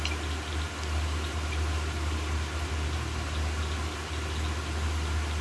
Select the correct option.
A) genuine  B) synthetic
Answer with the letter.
A